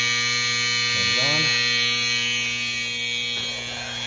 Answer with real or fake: real